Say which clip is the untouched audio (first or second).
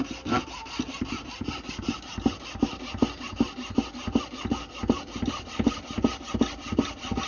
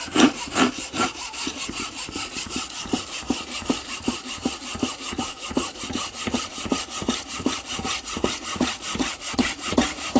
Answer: first